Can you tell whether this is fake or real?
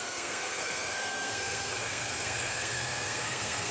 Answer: fake